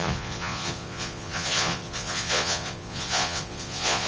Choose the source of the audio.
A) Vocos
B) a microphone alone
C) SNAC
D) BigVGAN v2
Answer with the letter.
A